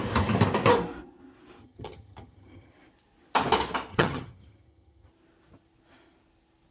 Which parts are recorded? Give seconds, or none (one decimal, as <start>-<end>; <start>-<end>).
0.0-1.6; 2.7-3.9; 5.1-6.7